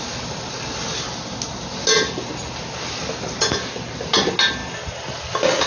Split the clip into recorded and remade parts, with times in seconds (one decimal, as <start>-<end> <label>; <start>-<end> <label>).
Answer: 0.0-5.7 recorded